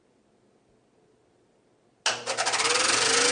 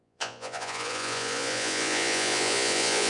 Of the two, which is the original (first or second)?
first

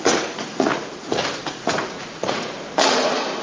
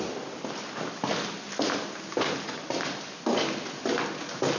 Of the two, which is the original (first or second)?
second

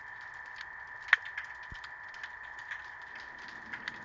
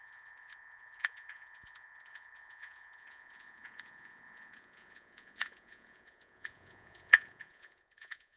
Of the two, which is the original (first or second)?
first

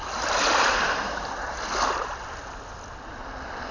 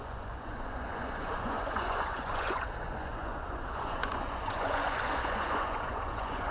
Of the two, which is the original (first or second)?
first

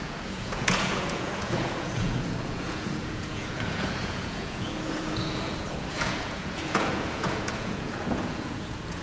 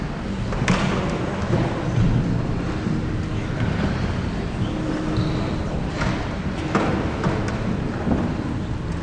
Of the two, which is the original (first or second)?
second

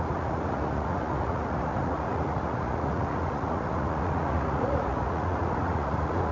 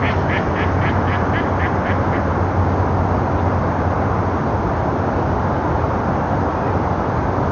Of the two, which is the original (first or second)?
second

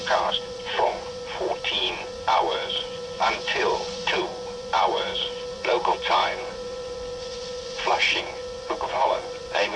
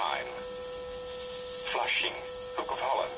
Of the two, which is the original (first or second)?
second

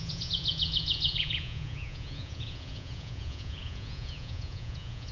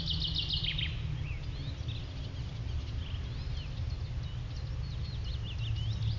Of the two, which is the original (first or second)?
second